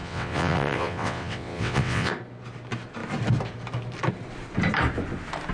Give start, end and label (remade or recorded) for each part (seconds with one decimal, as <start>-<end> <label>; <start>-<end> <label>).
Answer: 0.0-2.1 remade; 2.1-5.5 recorded